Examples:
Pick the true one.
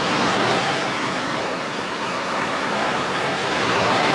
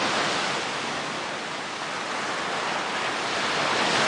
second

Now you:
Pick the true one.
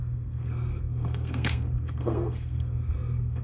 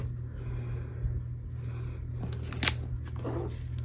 second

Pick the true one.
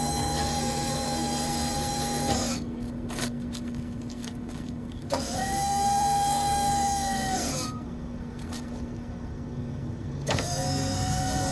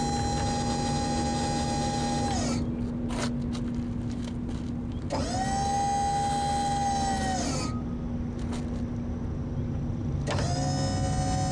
second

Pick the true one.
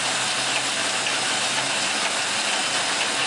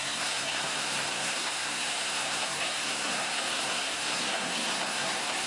first